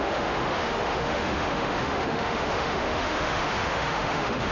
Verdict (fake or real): fake